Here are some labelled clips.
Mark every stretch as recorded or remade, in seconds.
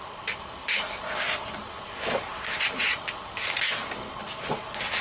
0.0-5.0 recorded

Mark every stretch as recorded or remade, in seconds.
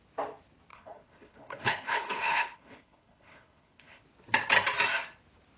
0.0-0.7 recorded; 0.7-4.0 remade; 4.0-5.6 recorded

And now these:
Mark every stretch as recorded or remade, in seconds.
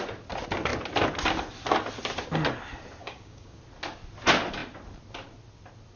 0.0-3.0 recorded; 3.0-3.6 remade; 3.6-6.0 recorded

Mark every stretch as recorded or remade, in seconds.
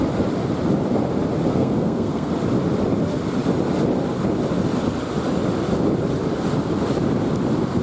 0.0-1.5 recorded; 1.5-2.3 remade; 2.3-7.8 recorded